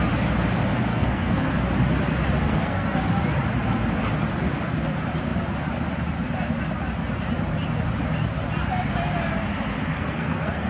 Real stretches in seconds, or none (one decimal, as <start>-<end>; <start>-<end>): 0.0-0.9; 1.6-2.4; 3.0-9.9